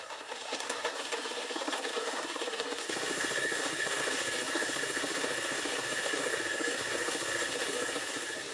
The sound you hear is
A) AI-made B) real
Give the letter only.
A